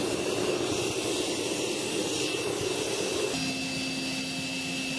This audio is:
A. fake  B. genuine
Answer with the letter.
B